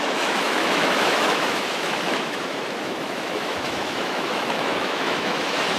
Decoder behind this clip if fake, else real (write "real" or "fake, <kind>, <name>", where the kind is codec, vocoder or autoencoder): fake, autoencoder, DAC-VAE